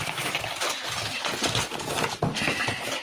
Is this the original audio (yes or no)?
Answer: yes